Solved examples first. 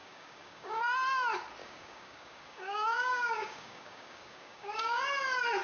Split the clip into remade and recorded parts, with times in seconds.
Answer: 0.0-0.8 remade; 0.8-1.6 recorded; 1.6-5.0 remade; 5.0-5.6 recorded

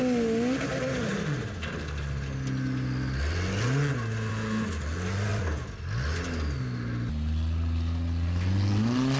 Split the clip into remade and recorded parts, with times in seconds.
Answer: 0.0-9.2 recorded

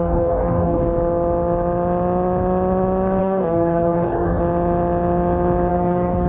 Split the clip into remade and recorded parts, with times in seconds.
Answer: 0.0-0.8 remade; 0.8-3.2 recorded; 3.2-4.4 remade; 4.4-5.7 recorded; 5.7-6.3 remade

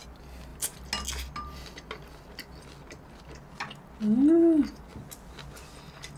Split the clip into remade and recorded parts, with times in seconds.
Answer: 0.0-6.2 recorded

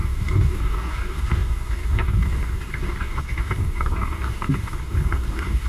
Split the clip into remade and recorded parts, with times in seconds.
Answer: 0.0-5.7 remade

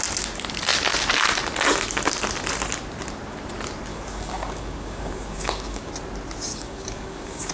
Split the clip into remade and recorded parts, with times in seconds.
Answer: 0.0-3.9 recorded; 3.9-5.9 remade; 5.9-6.5 recorded; 6.5-7.5 remade